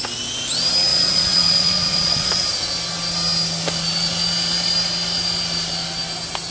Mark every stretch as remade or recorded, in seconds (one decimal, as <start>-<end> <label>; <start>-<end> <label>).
0.0-0.9 recorded; 0.9-2.4 remade; 2.4-6.5 recorded